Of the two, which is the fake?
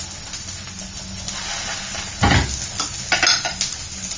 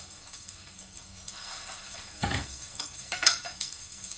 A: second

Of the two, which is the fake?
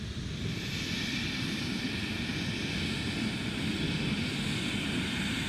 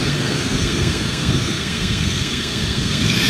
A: second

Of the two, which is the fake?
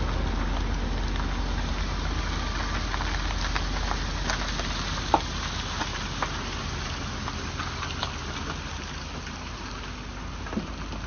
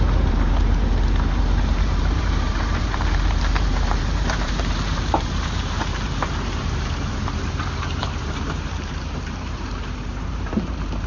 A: second